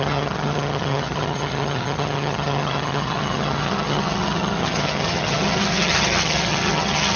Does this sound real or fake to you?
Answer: fake